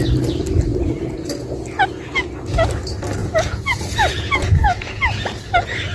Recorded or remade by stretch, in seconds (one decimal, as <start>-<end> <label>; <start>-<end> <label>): 0.0-3.2 recorded; 3.2-5.0 remade; 5.0-5.9 recorded